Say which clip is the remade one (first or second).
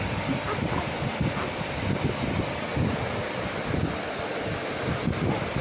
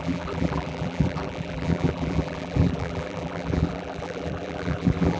second